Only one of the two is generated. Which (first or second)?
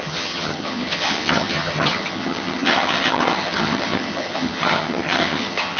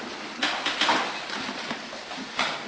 first